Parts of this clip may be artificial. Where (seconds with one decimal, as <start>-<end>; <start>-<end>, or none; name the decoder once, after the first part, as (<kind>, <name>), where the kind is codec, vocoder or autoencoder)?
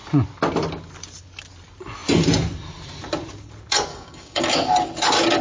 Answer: 3.9-4.4 (codec, DAC)